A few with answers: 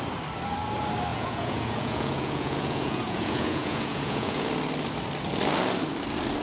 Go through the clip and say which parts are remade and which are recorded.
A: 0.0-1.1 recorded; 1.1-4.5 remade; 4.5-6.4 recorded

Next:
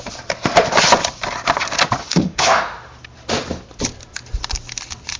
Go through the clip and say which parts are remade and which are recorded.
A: 0.0-2.0 recorded; 2.0-3.0 remade; 3.0-5.2 recorded